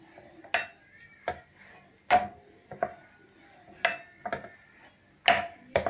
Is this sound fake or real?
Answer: real